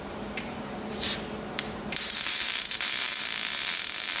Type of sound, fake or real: fake